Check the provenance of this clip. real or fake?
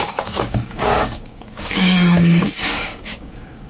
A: fake